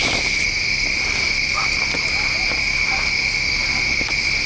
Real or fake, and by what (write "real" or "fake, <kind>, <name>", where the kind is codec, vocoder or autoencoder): real